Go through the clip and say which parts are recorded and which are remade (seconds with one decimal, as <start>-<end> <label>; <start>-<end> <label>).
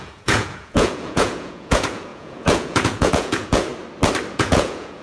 0.0-3.7 remade; 3.7-4.3 recorded; 4.3-5.0 remade